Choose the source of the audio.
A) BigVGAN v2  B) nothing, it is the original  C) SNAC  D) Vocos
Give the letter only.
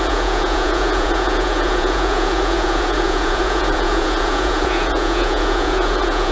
D